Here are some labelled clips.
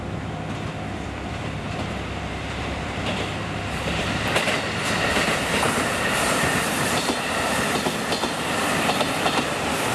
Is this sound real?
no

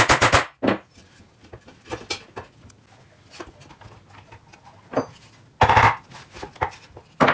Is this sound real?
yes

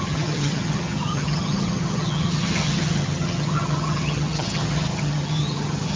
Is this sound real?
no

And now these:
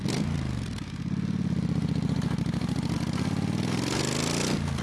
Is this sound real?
yes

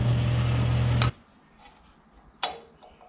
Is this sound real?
yes